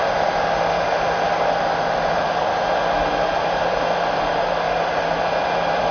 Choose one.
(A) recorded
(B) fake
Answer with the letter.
B